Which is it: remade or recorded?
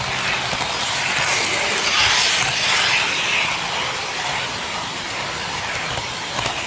recorded